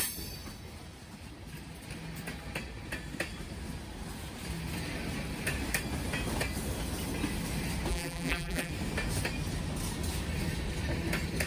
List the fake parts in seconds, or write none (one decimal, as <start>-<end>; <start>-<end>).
7.9-8.7